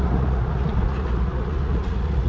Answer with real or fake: fake